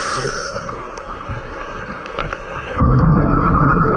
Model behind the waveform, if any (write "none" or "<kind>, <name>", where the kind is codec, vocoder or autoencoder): codec, SNAC